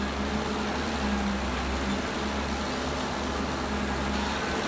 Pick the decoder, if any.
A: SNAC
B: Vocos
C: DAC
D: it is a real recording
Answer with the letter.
D